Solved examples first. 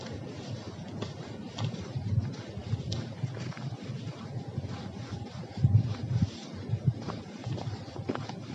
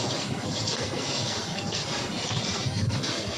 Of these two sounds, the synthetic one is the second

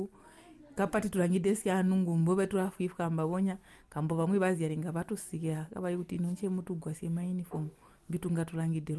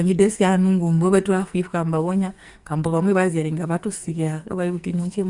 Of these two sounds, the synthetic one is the second